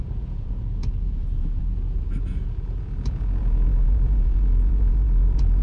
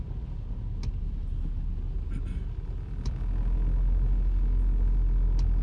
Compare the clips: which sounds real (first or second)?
second